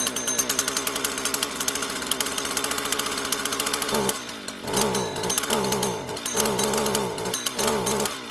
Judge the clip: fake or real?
real